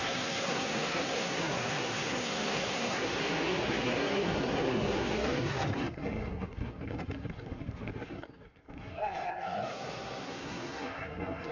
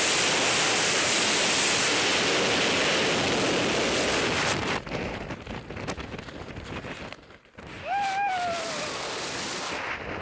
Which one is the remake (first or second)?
first